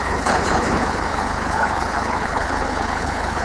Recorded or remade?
remade